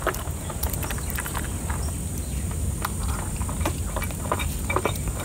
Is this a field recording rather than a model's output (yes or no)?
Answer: yes